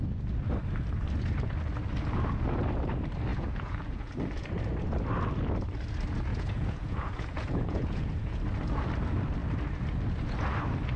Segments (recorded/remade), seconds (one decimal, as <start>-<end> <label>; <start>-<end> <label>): 0.0-3.3 recorded; 3.3-4.1 remade; 4.1-6.3 recorded; 6.3-8.4 remade; 8.4-11.0 recorded